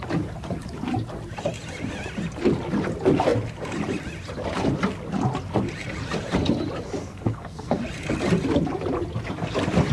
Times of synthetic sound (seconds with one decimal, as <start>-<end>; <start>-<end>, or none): 7.0-7.8